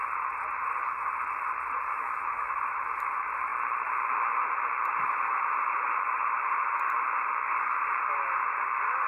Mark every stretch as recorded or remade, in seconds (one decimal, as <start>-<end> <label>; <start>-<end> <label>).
0.0-1.9 recorded; 1.9-2.6 remade; 2.6-9.1 recorded

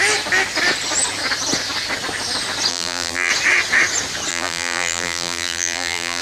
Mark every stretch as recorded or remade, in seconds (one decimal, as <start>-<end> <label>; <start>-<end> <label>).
0.0-2.7 recorded; 2.7-3.3 remade; 3.3-4.3 recorded; 4.3-6.2 remade

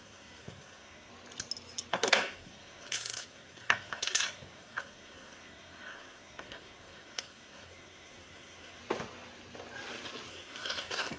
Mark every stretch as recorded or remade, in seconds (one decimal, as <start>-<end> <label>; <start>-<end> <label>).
0.0-1.1 remade; 1.1-1.9 recorded; 1.9-8.8 remade; 8.8-10.3 recorded; 10.3-11.2 remade

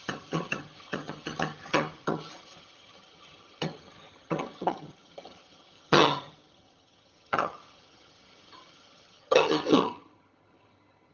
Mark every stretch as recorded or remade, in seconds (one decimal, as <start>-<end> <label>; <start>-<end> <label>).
0.0-11.1 remade